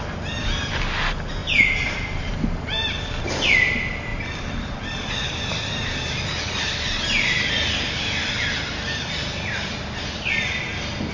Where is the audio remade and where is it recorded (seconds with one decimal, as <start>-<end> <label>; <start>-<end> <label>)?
0.0-1.4 recorded; 1.4-2.3 remade; 2.3-4.1 recorded; 4.1-5.5 remade; 5.5-11.1 recorded